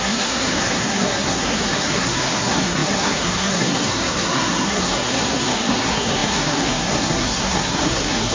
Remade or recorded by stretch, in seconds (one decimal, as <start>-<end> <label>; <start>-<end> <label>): 0.0-8.3 remade